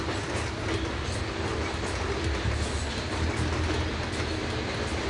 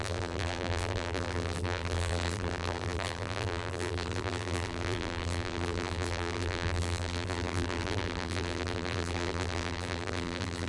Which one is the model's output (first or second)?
second